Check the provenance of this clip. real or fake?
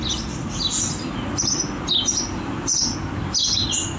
real